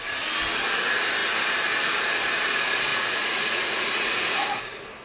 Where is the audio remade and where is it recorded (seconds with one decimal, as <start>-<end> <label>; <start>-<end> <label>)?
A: 0.0-2.9 recorded; 2.9-4.6 remade; 4.6-5.0 recorded